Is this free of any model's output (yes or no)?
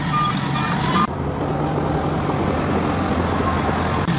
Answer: yes